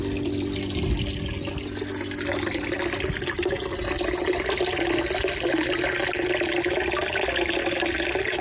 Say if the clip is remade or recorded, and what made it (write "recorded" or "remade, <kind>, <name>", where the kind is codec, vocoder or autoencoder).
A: recorded